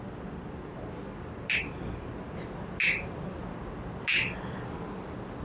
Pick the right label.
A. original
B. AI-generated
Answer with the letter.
A